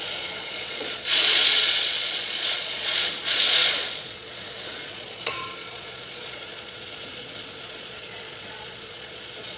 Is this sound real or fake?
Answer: fake